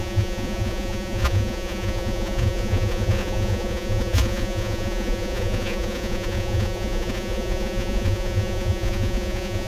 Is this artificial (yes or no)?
yes